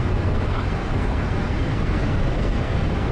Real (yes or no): no